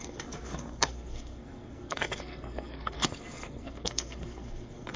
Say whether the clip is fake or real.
fake